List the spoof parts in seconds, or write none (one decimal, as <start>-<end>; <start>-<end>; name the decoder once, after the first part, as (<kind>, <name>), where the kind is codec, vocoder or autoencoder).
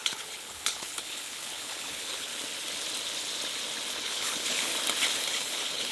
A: 0.0-2.3 (codec, HILCodec); 3.9-4.7; 5.4-5.9